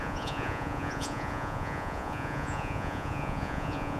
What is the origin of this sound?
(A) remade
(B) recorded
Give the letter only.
A